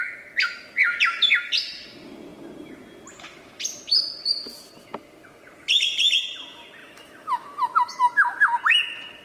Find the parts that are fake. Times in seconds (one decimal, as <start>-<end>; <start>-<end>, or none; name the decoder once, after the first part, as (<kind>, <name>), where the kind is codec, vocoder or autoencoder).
6.8-8.6 (autoencoder, DAC-VAE)